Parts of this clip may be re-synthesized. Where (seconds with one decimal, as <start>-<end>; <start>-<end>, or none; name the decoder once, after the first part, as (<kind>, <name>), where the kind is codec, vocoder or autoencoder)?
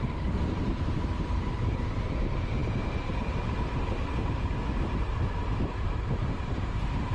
0.0-7.1 (vocoder, BigVGAN v2)